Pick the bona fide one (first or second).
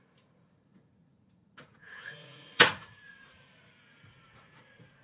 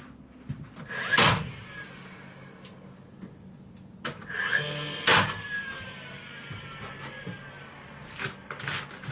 second